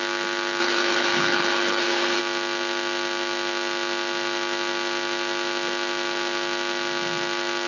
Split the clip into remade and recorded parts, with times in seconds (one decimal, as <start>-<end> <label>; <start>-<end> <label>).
0.0-0.6 recorded; 0.6-2.2 remade; 2.2-7.7 recorded